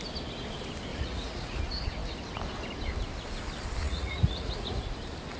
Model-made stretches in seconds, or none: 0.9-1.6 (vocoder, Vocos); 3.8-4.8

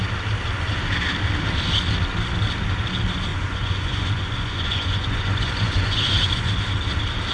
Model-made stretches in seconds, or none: 3.3-6.5 (vocoder, Vocos)

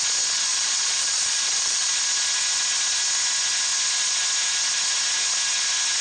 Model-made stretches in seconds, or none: 0.5-1.9 (vocoder, Vocos)